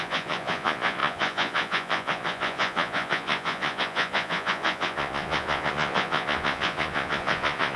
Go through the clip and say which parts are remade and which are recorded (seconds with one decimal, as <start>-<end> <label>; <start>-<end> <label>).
0.0-7.8 remade